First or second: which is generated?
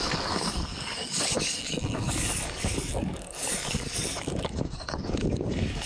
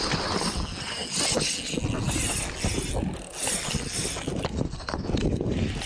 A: first